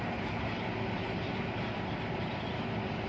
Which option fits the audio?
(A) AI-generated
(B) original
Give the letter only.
B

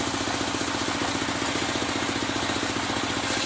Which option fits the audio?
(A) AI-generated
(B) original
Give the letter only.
B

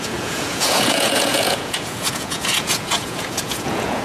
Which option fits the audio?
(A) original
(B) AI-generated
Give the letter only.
B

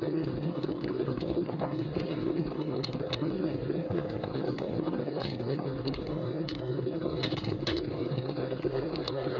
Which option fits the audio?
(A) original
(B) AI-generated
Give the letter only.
B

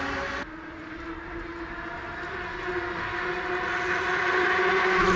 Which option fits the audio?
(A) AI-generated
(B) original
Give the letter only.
B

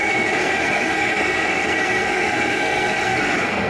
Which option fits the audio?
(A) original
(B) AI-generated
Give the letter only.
B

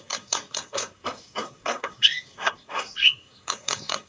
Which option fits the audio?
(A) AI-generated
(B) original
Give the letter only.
A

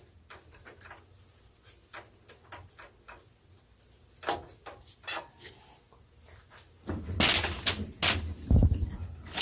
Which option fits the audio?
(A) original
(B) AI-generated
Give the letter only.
A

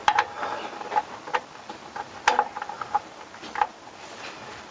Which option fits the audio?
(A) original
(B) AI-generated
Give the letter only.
B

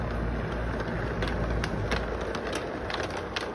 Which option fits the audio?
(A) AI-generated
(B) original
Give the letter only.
B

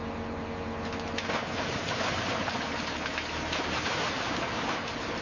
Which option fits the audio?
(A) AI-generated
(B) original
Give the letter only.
B